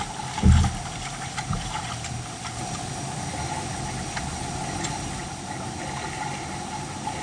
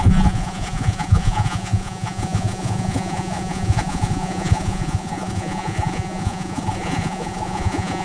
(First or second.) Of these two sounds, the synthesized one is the second